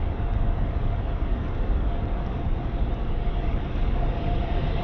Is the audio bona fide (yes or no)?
no